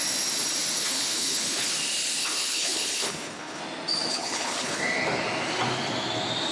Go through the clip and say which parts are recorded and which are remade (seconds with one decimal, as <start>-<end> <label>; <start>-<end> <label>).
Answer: 0.0-0.8 recorded; 0.8-1.7 remade; 1.7-2.2 recorded; 2.2-3.6 remade; 3.6-4.1 recorded; 4.1-4.8 remade; 4.8-6.5 recorded

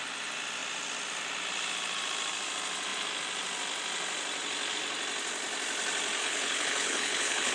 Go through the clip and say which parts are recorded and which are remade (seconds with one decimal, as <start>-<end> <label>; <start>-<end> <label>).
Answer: 0.0-6.2 recorded; 6.2-7.5 remade

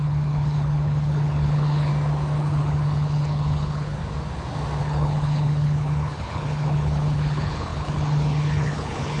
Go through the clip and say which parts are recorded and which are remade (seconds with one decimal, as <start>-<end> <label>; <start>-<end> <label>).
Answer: 0.0-1.9 remade; 1.9-2.4 recorded; 2.4-4.0 remade; 4.0-4.8 recorded; 4.8-9.2 remade

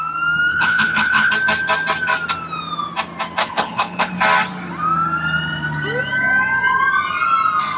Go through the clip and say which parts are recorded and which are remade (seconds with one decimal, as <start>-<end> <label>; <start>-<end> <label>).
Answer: 0.0-0.5 recorded; 0.5-1.3 remade; 1.3-3.4 recorded; 3.4-4.1 remade; 4.1-7.8 recorded

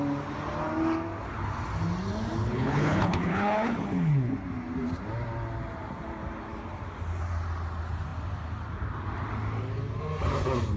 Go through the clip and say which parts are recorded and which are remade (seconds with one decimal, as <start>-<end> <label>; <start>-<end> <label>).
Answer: 0.0-2.4 recorded; 2.4-4.3 remade; 4.3-10.8 recorded

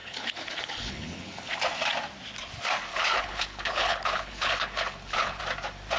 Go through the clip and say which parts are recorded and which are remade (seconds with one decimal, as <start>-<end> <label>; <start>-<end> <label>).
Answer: 0.0-1.5 remade; 1.5-2.9 recorded; 2.9-5.4 remade; 5.4-6.0 recorded

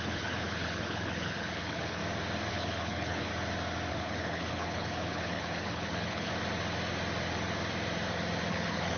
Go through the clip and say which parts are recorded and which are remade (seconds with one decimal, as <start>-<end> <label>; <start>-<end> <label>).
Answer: 0.0-2.0 remade; 2.0-2.5 recorded; 2.5-3.3 remade; 3.3-3.9 recorded; 3.9-6.3 remade; 6.3-8.5 recorded; 8.5-9.0 remade